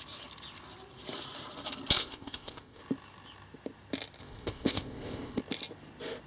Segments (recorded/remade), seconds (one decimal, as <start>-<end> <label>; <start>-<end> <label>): 0.0-2.0 recorded; 2.0-2.8 remade; 2.8-4.2 recorded; 4.2-5.4 remade; 5.4-6.3 recorded